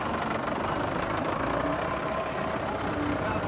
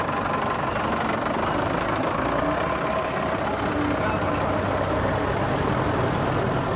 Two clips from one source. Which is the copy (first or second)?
first